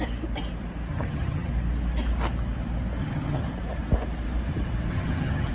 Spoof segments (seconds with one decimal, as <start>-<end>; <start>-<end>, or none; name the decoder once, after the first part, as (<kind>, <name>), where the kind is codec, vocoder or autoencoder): 0.9-1.5 (vocoder, HiFi-GAN); 3.0-3.5; 4.9-5.5